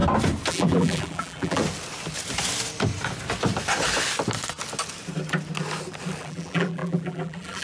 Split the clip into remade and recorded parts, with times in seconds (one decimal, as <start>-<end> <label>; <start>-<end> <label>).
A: 0.0-0.5 recorded; 0.5-1.6 remade; 1.6-6.2 recorded; 6.2-7.6 remade